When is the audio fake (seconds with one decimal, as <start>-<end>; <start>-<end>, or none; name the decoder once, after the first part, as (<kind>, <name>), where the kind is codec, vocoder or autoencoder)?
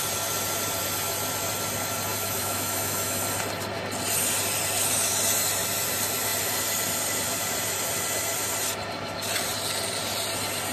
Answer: 2.1-3.2 (autoencoder, DAC-VAE)